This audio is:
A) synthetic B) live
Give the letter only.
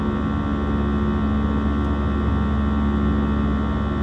B